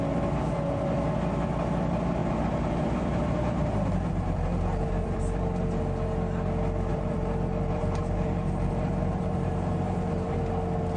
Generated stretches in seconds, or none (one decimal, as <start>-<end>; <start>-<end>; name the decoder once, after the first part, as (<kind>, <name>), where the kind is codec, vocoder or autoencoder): 2.2-5.4 (vocoder, BigVGAN v2); 6.9-10.4